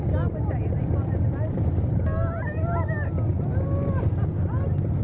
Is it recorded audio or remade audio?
recorded